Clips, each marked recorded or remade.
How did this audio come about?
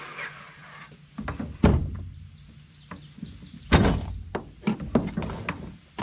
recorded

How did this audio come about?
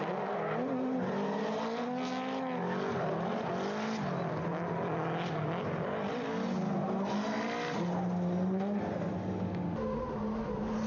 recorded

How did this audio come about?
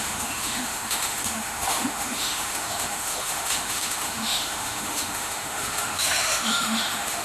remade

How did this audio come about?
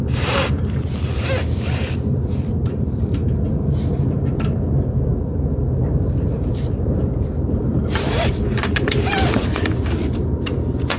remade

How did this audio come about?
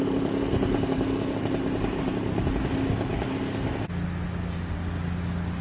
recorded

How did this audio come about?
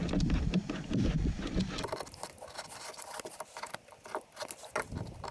recorded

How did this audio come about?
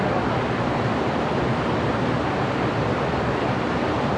recorded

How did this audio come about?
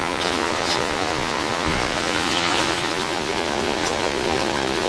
remade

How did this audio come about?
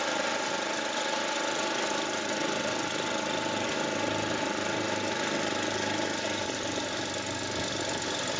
recorded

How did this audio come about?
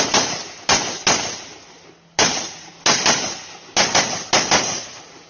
recorded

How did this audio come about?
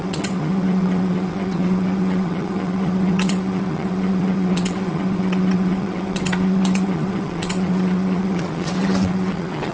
remade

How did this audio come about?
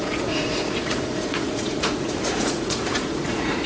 remade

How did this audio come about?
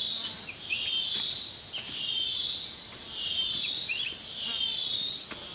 remade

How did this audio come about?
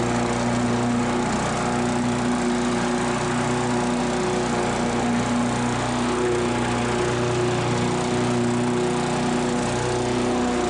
recorded